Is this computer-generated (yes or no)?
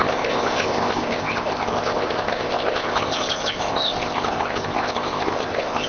yes